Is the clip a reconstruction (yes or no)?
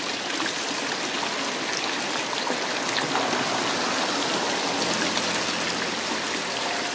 no